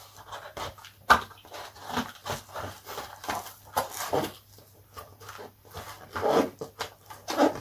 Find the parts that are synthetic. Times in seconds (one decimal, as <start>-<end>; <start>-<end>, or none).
none